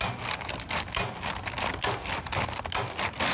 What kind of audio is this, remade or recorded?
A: recorded